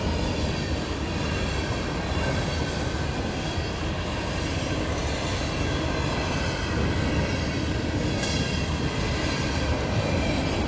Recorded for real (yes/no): yes